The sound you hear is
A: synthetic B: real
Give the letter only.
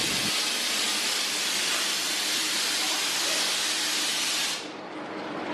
B